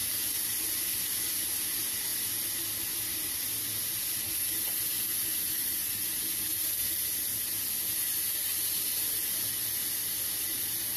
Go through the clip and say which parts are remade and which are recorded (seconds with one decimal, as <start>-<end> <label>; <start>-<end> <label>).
0.0-5.3 recorded; 5.3-6.7 remade; 6.7-8.5 recorded; 8.5-9.5 remade; 9.5-11.0 recorded